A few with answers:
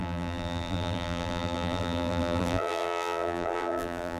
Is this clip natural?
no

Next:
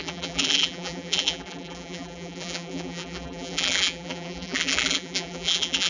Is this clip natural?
no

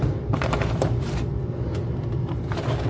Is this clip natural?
no